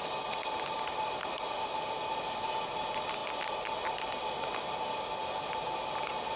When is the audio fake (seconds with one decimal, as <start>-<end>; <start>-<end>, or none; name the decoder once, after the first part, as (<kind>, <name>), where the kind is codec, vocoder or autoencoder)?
none